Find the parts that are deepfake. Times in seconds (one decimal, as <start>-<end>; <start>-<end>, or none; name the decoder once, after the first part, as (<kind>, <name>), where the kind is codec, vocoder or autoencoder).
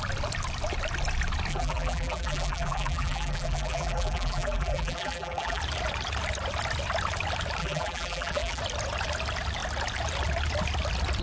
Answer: 1.5-5.6 (vocoder, BigVGAN v2); 7.6-8.6